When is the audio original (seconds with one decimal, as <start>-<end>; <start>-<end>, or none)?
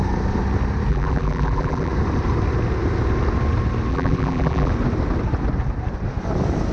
0.0-0.9; 1.9-3.9; 4.7-6.7